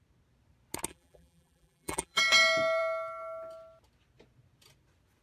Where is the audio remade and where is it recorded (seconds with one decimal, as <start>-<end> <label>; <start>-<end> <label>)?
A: 0.0-0.9 recorded; 0.9-2.2 remade; 2.2-5.2 recorded